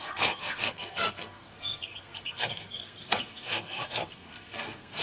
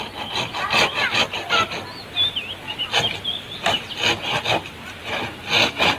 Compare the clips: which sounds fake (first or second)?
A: first